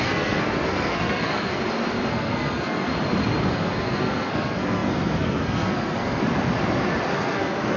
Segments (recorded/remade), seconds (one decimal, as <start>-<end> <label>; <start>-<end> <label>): 0.0-1.6 remade; 1.6-2.1 recorded; 2.1-2.9 remade; 2.9-3.5 recorded; 3.5-6.2 remade; 6.2-7.1 recorded; 7.1-7.8 remade